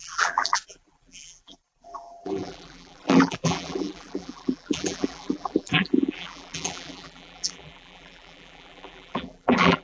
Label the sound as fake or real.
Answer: fake